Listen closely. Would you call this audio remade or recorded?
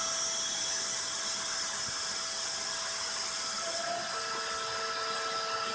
recorded